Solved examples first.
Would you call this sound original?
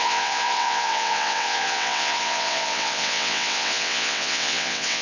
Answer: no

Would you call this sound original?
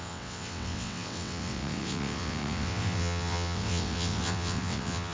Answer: no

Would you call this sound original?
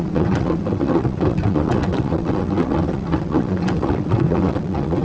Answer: no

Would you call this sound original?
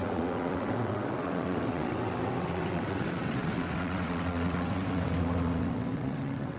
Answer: no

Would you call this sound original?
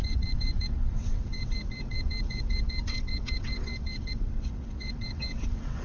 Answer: no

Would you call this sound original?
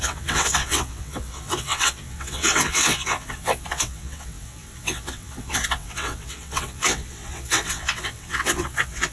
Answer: no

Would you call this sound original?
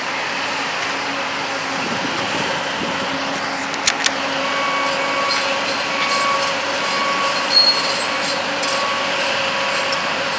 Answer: yes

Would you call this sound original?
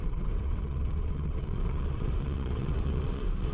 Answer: no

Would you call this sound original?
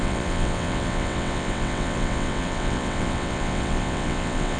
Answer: no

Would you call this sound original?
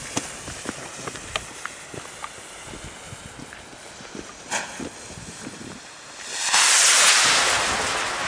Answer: yes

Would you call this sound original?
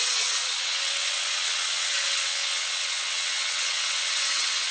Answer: no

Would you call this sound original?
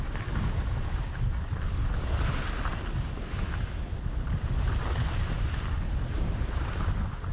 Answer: yes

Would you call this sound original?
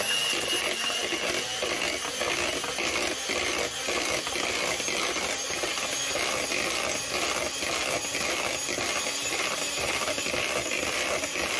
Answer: yes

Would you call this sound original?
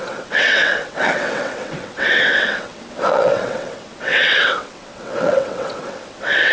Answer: no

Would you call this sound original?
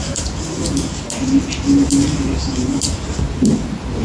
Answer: yes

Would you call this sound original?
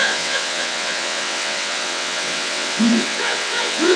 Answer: no